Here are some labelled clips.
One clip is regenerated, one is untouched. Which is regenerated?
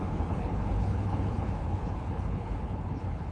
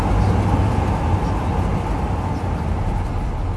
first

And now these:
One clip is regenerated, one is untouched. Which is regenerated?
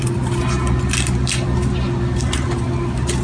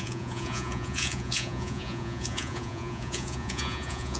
second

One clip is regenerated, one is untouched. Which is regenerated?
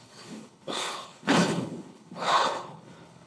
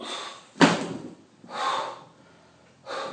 first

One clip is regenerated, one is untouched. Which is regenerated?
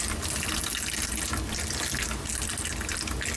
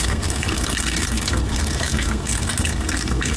second